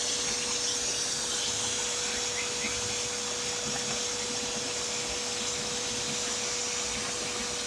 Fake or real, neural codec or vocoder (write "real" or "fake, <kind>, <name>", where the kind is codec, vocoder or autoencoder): real